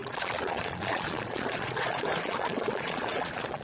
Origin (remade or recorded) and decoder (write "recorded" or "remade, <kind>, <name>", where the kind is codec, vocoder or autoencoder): remade, vocoder, Vocos